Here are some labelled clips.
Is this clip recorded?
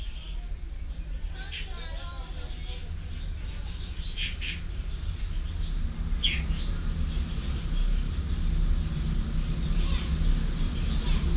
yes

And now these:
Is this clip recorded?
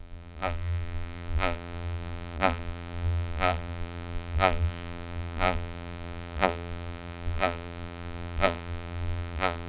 no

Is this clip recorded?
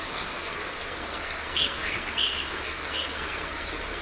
no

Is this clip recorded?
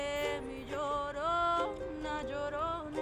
yes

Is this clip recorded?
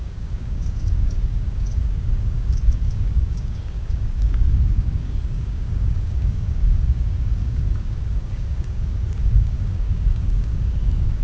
no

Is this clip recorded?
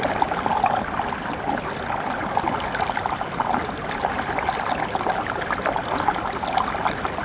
yes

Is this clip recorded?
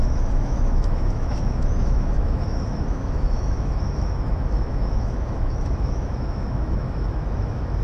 no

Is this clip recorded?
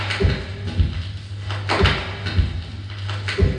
yes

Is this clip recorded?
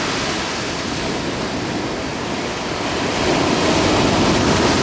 yes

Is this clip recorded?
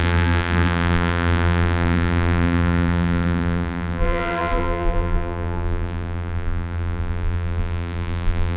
no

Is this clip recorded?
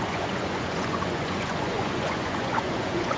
no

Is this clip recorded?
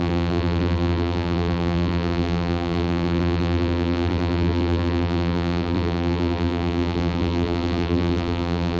no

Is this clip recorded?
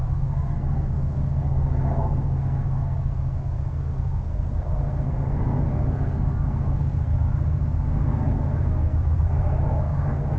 no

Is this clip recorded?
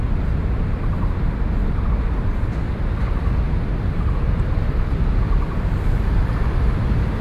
yes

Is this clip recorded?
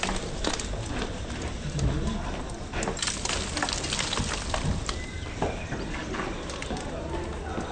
yes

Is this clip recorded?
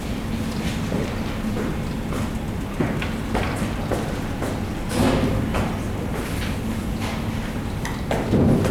yes